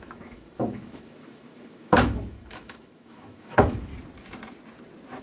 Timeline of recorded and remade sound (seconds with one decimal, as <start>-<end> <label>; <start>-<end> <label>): 0.0-3.9 remade; 3.9-5.2 recorded